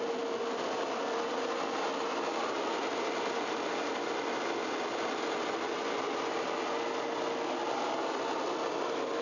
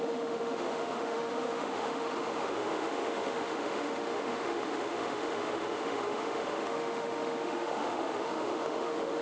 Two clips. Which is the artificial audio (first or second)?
second